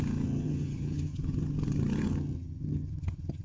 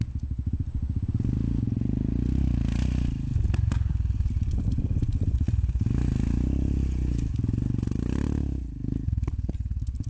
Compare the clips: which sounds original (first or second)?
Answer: second